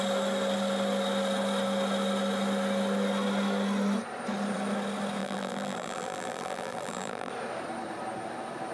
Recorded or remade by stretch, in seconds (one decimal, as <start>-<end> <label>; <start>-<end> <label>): 0.0-5.2 recorded; 5.2-7.3 remade; 7.3-8.7 recorded